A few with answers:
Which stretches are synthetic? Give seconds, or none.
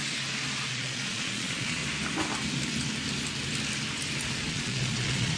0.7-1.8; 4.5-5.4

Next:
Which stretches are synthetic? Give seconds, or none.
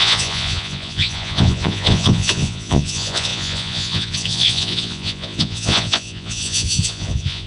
0.0-7.5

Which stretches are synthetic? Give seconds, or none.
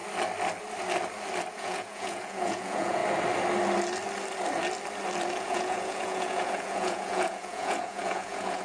1.5-3.0; 5.4-8.6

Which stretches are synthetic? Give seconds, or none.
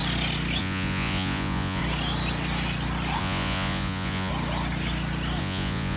0.6-1.8; 3.2-4.3; 5.4-6.0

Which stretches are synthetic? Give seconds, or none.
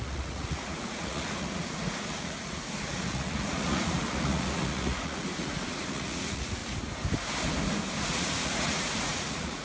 0.0-6.6; 8.0-9.6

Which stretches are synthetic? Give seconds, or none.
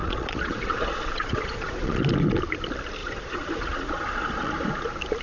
0.0-2.0; 3.0-4.5